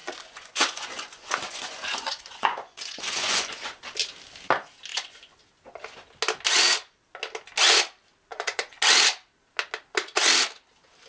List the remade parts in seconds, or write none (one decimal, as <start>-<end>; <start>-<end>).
0.0-3.8; 4.9-5.4; 8.3-8.8